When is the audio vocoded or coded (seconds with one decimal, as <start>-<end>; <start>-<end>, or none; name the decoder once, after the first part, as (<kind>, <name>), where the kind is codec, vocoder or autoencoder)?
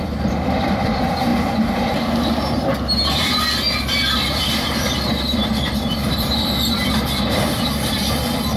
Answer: 0.0-1.3 (vocoder, BigVGAN v2); 3.2-8.6